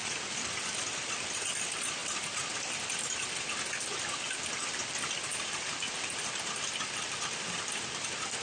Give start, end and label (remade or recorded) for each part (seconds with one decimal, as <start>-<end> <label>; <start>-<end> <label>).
0.0-0.6 recorded; 0.6-2.0 remade; 2.0-4.6 recorded; 4.6-8.4 remade